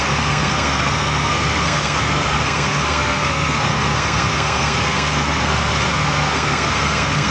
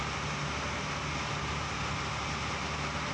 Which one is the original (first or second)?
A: second